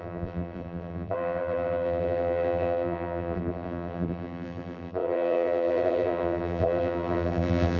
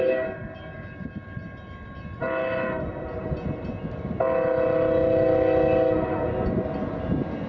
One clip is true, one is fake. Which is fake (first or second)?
first